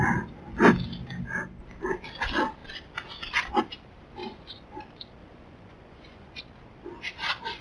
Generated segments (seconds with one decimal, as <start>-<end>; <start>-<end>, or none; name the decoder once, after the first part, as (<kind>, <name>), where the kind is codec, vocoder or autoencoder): 4.2-4.8 (vocoder, Vocos); 5.2-6.4